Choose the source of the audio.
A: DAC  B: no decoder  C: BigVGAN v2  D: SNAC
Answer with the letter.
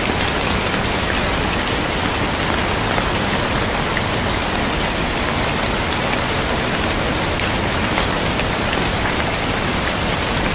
B